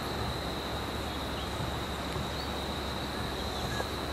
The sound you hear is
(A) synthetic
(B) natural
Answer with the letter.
B